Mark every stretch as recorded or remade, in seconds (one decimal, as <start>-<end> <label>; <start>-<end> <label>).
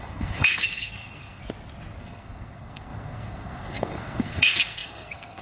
0.0-1.4 remade; 1.4-2.0 recorded; 2.0-5.4 remade